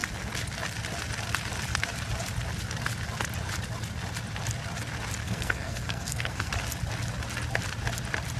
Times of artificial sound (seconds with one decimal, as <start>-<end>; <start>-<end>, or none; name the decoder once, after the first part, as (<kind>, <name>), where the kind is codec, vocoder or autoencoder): 5.2-6.5 (codec, SNAC)